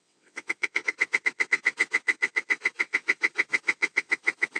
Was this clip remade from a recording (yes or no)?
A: yes